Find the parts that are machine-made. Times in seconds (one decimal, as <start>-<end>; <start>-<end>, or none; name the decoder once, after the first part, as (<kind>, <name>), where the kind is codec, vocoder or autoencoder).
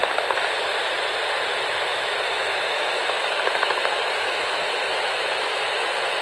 1.7-6.2 (autoencoder, DAC-VAE)